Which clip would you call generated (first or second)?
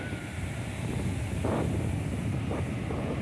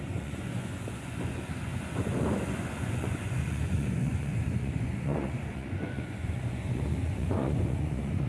second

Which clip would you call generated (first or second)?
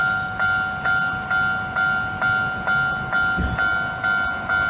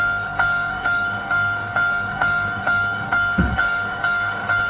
second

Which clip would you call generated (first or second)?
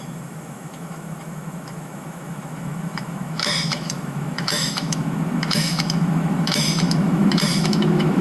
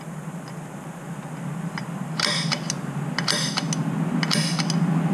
first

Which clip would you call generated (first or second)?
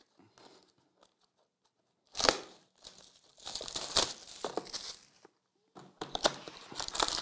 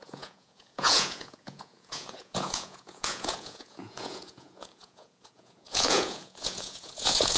second